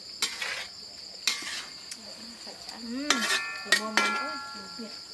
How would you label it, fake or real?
real